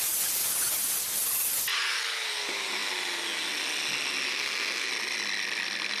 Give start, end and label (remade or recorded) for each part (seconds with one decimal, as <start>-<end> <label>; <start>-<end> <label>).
0.0-4.3 recorded; 4.3-4.9 remade; 4.9-6.0 recorded